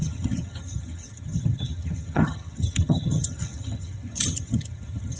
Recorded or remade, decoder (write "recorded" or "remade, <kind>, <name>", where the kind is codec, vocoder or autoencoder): remade, vocoder, HiFi-GAN